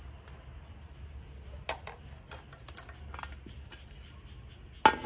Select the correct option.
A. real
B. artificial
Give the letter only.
A